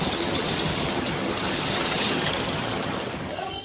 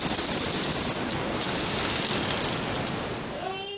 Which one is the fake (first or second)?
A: first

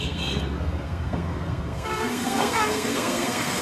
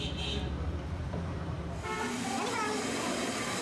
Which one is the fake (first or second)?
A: first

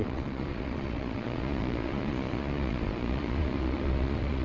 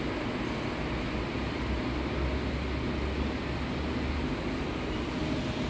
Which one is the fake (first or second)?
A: first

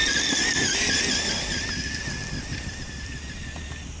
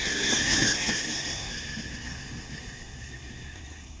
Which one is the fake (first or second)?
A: second